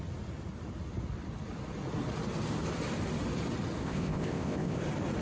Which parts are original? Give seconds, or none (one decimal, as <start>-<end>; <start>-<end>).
0.0-3.8; 4.8-5.2